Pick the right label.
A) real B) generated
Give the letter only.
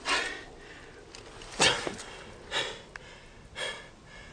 A